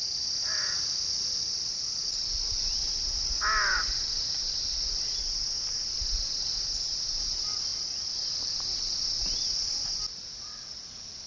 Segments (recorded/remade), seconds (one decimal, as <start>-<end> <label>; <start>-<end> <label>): 0.0-11.3 recorded